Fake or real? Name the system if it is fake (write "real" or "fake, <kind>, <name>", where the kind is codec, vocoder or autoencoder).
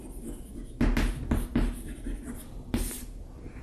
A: real